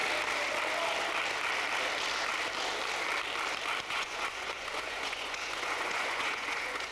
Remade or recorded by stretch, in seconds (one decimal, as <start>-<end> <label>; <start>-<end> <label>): 0.0-3.9 recorded; 3.9-6.9 remade